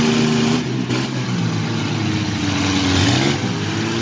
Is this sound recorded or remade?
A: recorded